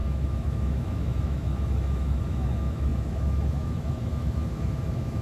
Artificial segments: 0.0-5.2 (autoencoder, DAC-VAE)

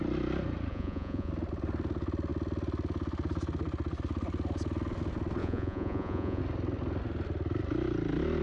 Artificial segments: 0.7-1.3 (vocoder, Vocos); 5.4-6.4